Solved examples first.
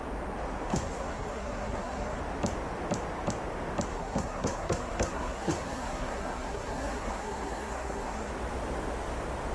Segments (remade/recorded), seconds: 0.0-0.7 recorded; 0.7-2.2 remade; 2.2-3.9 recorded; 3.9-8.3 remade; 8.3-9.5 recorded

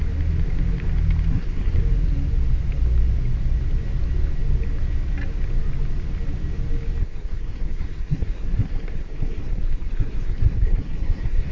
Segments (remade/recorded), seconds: 0.0-1.3 recorded; 1.3-1.8 remade; 1.8-7.0 recorded; 7.0-11.5 remade

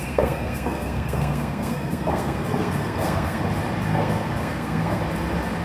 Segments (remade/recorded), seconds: 0.0-3.4 remade; 3.4-3.9 recorded; 3.9-5.0 remade; 5.0-5.6 recorded